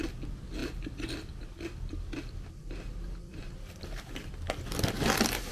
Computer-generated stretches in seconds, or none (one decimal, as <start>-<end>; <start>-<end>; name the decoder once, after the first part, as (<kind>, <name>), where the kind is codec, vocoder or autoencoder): 2.6-4.3 (vocoder, BigVGAN v2)